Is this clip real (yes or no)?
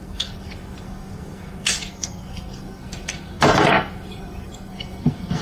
no